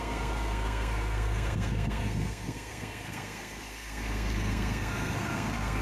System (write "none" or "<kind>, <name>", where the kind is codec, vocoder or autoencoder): codec, SNAC